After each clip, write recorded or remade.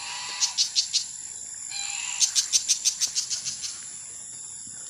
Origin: recorded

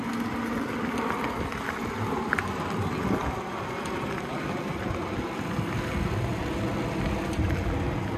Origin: recorded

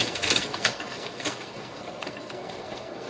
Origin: remade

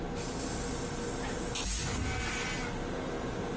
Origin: recorded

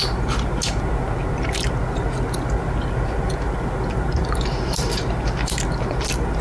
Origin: recorded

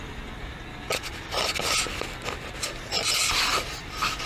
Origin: recorded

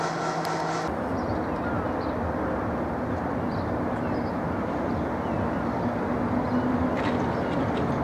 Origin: recorded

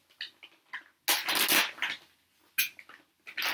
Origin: recorded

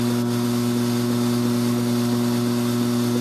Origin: recorded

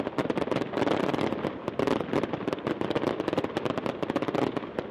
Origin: recorded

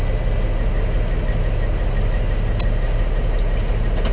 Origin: recorded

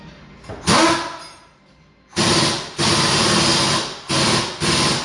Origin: recorded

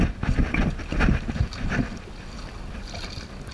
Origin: recorded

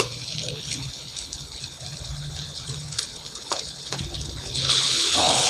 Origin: remade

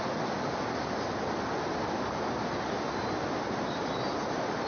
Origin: recorded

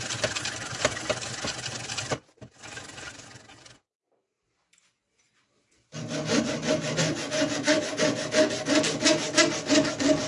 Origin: recorded